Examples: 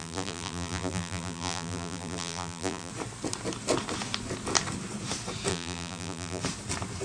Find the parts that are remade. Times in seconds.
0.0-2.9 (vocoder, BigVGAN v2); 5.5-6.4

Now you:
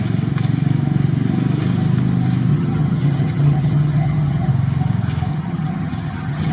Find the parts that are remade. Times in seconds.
2.5-4.5 (vocoder, HiFi-GAN); 5.3-6.5

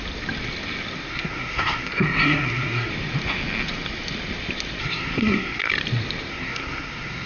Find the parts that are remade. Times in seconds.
1.1-2.9 (codec, SNAC); 4.8-5.7; 6.3-7.3